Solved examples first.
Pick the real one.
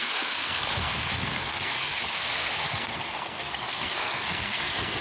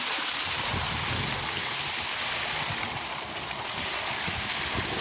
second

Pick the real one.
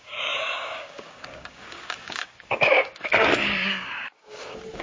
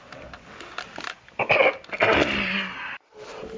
second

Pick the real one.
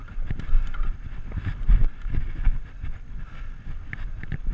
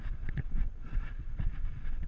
first